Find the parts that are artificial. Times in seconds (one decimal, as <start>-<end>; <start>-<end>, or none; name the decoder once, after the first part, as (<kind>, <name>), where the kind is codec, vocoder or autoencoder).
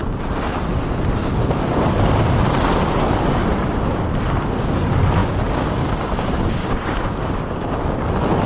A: 5.2-7.0 (codec, DAC)